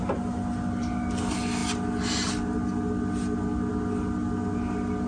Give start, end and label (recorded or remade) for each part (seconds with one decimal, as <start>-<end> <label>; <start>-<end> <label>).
0.0-5.1 recorded